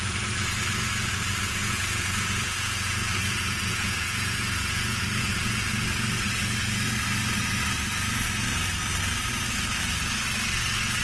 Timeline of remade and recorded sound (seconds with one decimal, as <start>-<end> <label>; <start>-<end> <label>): 0.0-1.6 recorded; 1.6-5.7 remade; 5.7-11.0 recorded